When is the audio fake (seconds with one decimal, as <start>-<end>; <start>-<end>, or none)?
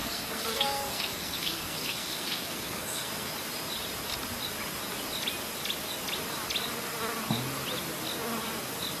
0.0-3.3